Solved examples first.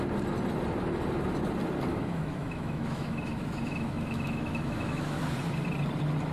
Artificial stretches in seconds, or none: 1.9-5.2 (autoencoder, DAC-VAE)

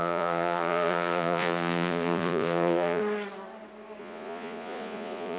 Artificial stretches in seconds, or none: 0.0-3.0 (vocoder, Vocos); 4.0-5.4

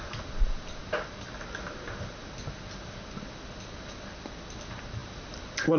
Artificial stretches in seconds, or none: none

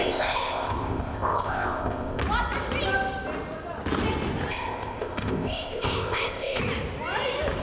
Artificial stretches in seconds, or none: 0.0-2.2 (codec, ZipCodec); 4.5-6.6

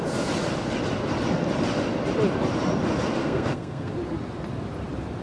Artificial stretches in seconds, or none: 3.2-3.9 (codec, SNAC)

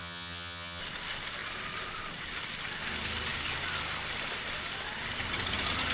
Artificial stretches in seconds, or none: 0.0-0.8 (vocoder, HiFi-GAN)